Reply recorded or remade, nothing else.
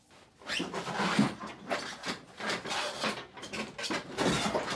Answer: recorded